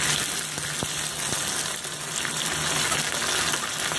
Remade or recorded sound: recorded